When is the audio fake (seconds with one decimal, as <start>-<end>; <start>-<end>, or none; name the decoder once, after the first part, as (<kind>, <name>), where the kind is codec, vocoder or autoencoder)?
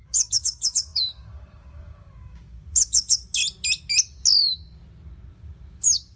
0.0-3.4 (codec, DAC); 5.3-6.2